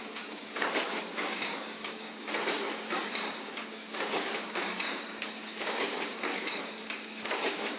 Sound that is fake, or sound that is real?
fake